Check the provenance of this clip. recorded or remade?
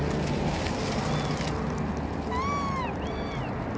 recorded